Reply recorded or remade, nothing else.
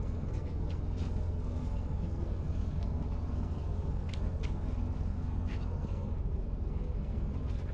remade